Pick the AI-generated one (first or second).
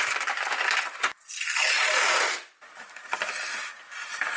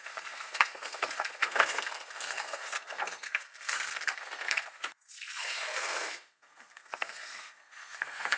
second